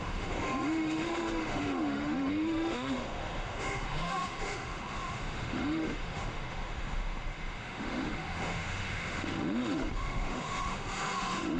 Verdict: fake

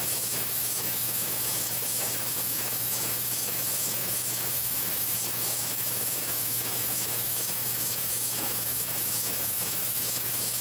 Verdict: fake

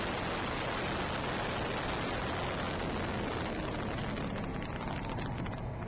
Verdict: real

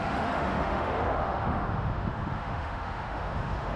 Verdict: fake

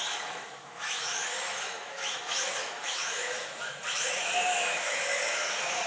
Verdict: fake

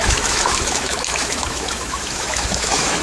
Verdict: fake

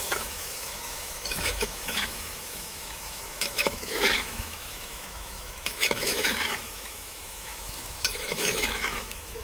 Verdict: fake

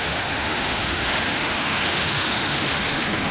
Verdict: fake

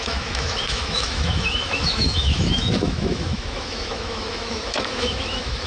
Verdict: fake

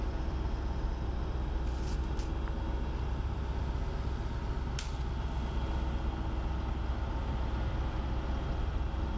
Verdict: real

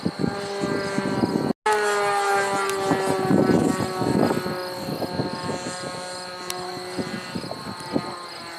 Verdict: real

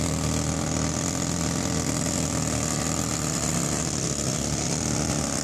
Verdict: real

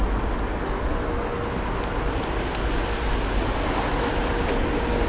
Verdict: real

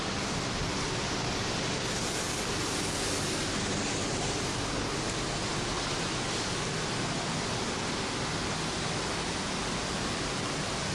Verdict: real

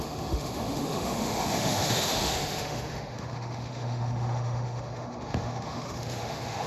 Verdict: fake